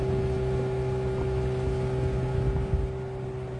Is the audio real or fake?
real